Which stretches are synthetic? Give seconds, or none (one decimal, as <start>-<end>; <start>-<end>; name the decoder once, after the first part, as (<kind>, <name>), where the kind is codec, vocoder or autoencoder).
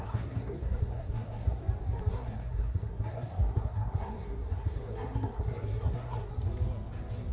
0.0-1.6 (codec, SNAC); 2.1-6.3